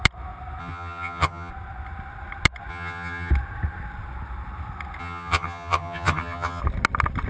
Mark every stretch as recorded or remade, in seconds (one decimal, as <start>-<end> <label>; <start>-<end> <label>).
0.0-0.6 recorded; 0.6-1.5 remade; 1.5-2.7 recorded; 2.7-3.3 remade; 3.3-5.0 recorded; 5.0-6.6 remade; 6.6-7.3 recorded